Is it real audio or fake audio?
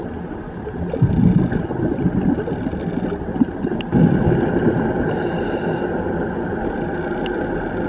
real